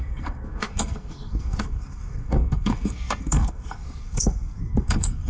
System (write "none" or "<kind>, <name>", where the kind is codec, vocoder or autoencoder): codec, SNAC